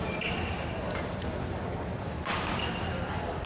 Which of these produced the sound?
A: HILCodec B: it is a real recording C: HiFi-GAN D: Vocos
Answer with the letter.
B